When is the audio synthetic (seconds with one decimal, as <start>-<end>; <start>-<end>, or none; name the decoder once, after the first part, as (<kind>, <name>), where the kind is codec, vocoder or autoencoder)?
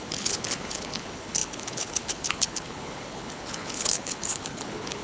0.0-5.0 (codec, HILCodec)